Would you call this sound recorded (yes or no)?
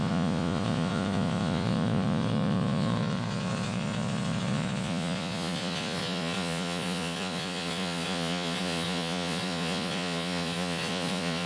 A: no